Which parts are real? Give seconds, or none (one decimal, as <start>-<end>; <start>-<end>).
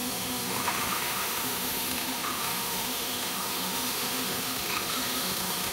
none